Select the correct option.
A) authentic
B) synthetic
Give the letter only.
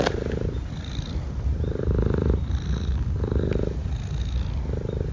A